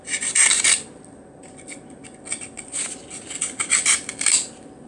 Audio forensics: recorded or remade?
recorded